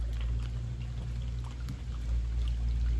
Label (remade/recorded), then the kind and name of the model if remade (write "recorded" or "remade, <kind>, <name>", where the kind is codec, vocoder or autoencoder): recorded